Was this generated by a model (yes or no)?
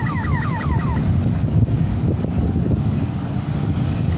yes